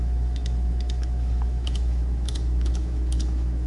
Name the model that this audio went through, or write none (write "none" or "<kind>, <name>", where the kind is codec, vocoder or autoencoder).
autoencoder, DAC-VAE